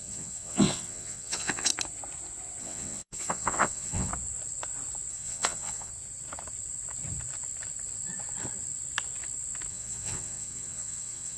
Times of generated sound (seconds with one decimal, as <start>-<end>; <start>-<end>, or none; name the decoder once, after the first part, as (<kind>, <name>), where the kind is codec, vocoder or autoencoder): 0.0-1.7 (vocoder, WaveNeXt); 2.6-4.1; 5.1-5.9; 9.7-11.4